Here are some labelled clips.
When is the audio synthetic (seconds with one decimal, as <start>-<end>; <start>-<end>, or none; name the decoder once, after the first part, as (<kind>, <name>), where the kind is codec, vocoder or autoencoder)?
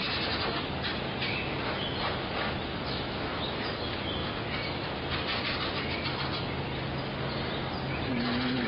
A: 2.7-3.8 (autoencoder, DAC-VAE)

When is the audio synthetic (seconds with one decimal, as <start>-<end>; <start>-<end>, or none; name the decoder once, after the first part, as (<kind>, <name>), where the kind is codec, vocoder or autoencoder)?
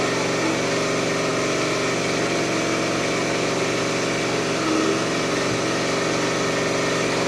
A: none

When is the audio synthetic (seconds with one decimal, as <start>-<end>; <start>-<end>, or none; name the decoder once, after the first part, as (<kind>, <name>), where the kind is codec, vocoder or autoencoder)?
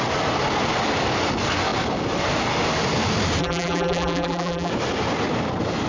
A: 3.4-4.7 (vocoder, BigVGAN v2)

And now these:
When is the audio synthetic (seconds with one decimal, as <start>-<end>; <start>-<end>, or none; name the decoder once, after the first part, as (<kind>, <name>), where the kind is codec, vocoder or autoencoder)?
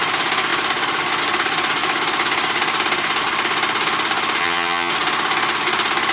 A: 4.4-4.9 (vocoder, HiFi-GAN)